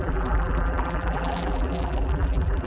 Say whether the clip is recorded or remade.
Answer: remade